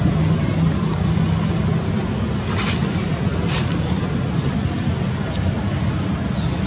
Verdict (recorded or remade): recorded